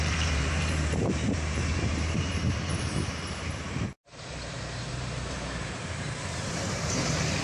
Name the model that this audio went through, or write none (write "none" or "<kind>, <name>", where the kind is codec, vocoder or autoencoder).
vocoder, BigVGAN v2